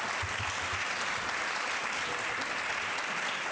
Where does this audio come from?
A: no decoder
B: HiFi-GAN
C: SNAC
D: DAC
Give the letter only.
A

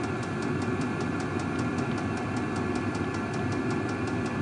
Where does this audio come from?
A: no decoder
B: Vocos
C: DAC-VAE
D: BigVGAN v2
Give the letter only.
A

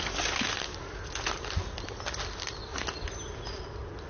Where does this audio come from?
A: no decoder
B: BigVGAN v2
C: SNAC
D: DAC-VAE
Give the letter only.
A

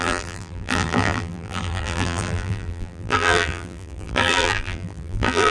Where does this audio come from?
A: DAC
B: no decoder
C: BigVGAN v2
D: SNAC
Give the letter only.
C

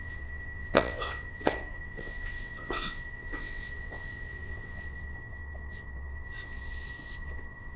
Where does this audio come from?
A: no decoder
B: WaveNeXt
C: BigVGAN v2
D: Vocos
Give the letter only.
B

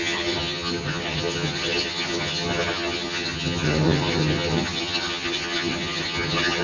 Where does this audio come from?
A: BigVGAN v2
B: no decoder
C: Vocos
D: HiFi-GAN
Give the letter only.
D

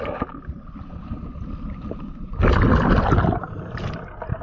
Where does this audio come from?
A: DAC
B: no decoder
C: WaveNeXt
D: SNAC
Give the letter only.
B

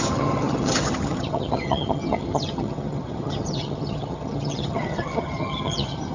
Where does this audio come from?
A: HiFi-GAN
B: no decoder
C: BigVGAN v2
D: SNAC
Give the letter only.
A